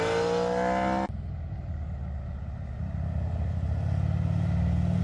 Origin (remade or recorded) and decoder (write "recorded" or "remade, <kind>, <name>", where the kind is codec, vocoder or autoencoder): recorded